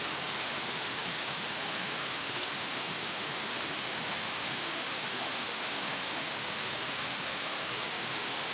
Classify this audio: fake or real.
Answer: fake